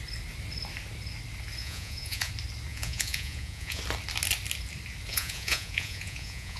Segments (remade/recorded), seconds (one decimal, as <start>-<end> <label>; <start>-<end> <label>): 0.0-1.6 recorded; 1.6-2.3 remade; 2.3-2.7 recorded; 2.7-3.8 remade; 3.8-5.1 recorded; 5.1-6.6 remade